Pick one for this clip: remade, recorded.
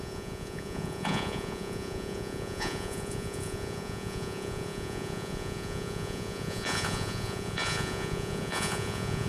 remade